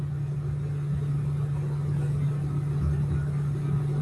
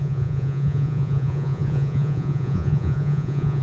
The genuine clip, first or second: first